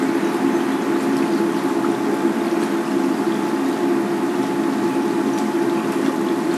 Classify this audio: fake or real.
real